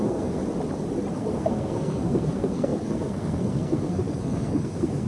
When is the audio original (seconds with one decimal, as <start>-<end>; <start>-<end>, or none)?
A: 0.4-1.1